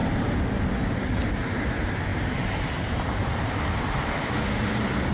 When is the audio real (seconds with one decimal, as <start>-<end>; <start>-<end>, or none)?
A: 0.5-2.1; 3.4-5.1